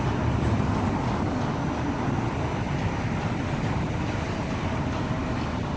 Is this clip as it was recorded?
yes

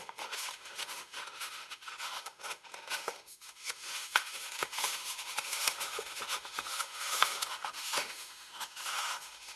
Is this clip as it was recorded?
no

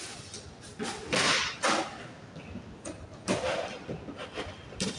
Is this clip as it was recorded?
yes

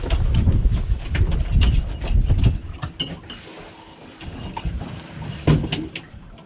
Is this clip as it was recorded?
yes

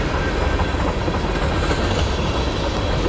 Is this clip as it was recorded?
yes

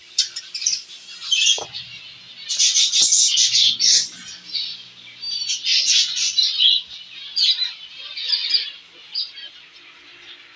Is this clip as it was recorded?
yes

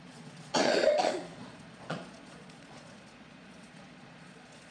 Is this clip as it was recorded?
no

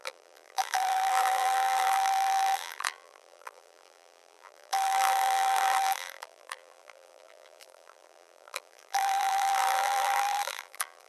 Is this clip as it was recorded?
no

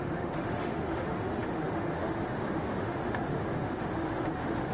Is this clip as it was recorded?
no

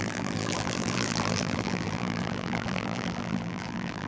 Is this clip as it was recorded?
no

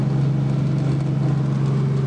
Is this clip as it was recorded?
yes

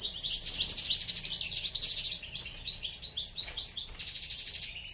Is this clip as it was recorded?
yes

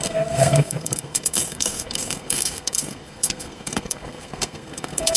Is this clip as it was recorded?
no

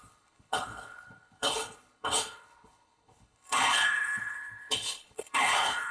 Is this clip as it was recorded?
no